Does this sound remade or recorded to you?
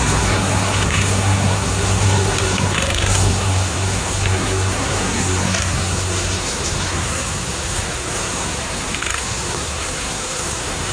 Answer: remade